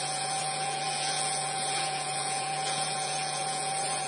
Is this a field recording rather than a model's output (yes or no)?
no